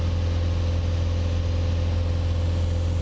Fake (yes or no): no